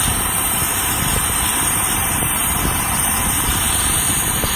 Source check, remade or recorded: remade